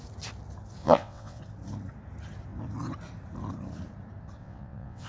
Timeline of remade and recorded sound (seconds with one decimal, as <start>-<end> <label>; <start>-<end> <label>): 0.0-0.8 recorded; 0.8-1.4 remade; 1.4-4.4 recorded; 4.4-5.1 remade